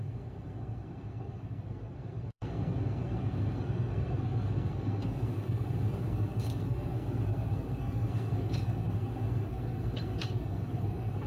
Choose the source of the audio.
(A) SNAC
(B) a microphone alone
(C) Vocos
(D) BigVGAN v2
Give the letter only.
A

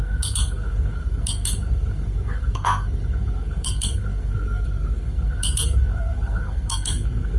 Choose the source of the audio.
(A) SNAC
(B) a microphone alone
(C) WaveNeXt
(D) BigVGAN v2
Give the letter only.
A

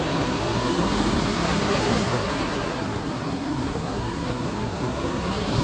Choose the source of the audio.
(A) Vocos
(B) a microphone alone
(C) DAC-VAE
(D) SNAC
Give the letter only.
D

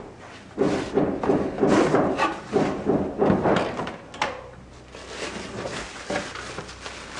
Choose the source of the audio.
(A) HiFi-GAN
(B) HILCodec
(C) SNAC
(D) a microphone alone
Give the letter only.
D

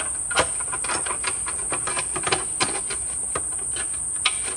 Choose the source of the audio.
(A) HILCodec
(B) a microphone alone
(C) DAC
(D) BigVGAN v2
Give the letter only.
B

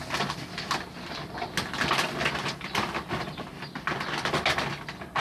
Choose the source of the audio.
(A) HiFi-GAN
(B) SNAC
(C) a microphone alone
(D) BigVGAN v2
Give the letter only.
C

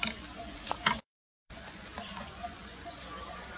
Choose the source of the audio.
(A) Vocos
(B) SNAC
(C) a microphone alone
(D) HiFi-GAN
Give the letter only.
A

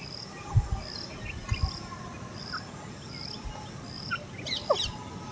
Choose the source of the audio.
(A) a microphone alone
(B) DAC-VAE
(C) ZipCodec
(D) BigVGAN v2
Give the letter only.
A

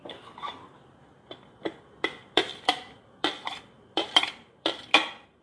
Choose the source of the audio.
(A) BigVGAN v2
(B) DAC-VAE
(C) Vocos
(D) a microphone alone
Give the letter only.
A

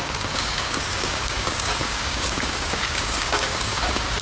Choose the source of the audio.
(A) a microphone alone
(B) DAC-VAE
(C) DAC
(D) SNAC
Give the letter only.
C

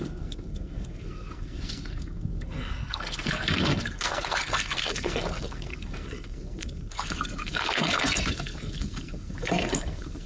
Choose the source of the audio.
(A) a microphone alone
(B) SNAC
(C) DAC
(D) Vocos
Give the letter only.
B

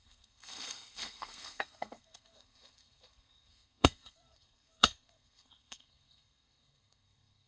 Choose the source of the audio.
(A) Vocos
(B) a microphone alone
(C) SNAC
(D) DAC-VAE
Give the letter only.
C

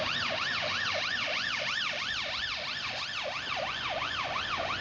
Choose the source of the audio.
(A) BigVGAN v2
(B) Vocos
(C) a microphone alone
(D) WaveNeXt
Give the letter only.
B